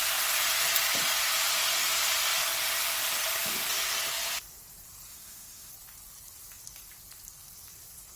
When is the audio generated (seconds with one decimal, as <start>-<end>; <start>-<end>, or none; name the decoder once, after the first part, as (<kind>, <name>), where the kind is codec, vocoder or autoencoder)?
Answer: 5.1-5.7 (autoencoder, DAC-VAE)